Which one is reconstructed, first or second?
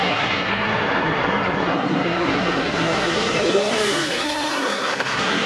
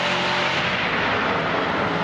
first